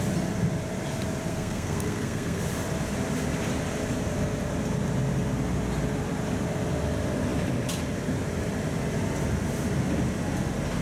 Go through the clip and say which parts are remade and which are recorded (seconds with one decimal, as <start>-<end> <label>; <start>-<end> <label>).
0.0-1.3 recorded; 1.3-2.4 remade; 2.4-10.8 recorded